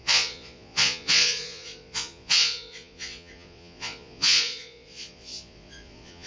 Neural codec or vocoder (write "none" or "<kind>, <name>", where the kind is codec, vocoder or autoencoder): vocoder, Vocos